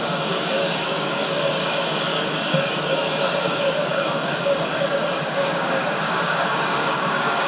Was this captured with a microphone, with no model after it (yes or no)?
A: no